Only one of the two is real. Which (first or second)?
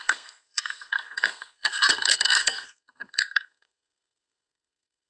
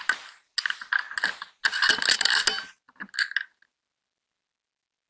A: second